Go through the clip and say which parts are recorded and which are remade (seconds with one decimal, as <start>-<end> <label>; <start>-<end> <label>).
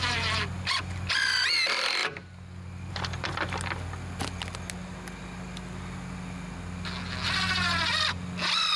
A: 0.0-8.8 recorded